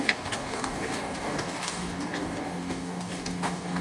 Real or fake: fake